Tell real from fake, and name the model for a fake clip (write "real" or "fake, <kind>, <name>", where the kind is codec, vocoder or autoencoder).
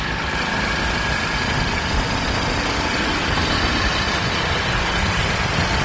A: real